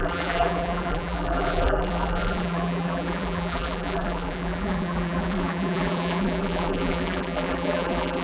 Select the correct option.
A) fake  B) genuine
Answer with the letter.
A